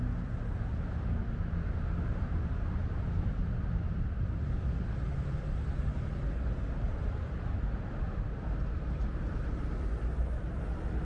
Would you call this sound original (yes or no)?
no